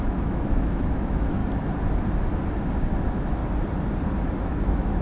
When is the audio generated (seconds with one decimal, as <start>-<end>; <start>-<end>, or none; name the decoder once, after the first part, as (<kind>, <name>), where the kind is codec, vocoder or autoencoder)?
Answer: 0.0-1.4 (autoencoder, DAC-VAE); 3.0-3.4; 4.4-5.0

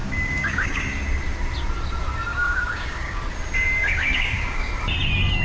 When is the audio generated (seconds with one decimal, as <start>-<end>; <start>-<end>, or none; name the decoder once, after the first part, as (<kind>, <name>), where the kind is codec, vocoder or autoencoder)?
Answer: 0.0-0.8 (codec, DAC); 2.3-3.2; 3.8-4.7

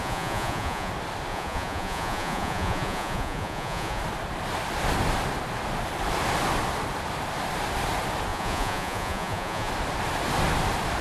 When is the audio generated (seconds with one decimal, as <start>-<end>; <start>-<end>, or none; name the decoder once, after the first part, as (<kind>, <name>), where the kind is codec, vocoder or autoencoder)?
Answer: 0.0-0.9 (vocoder, Vocos); 1.3-4.0; 8.3-9.7

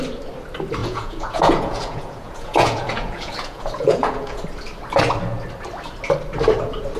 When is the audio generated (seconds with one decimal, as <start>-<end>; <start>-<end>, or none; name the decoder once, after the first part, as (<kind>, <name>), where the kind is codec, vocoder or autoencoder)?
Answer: 0.8-4.4 (vocoder, Vocos)

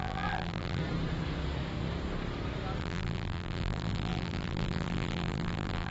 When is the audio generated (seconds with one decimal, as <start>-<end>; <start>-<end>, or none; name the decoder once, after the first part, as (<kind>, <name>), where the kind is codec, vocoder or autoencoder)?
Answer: 0.0-0.8 (vocoder, BigVGAN v2); 2.8-5.9

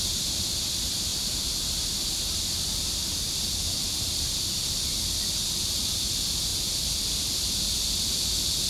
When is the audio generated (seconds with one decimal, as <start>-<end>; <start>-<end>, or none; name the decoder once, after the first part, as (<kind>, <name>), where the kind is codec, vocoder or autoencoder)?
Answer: none

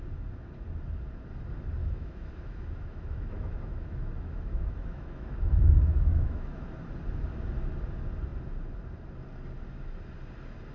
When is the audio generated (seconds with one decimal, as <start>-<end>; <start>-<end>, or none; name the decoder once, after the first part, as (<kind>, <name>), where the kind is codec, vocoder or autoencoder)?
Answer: 1.8-6.8 (autoencoder, DAC-VAE)